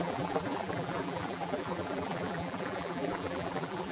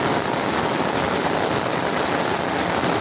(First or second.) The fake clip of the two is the first